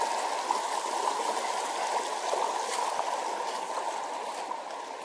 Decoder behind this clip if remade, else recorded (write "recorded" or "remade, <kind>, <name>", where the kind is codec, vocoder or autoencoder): recorded